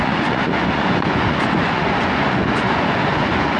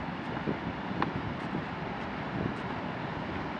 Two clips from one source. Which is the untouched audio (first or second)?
second